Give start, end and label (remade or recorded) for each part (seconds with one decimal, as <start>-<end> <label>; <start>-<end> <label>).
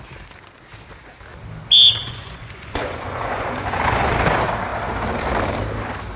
0.0-2.0 recorded; 2.0-4.1 remade; 4.1-6.2 recorded